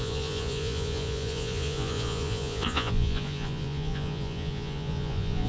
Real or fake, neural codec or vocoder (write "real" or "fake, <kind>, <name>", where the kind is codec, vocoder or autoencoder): fake, vocoder, Vocos